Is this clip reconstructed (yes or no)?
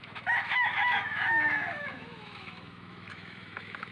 yes